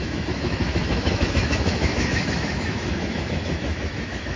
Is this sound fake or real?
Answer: fake